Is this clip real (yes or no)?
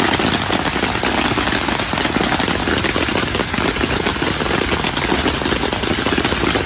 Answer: yes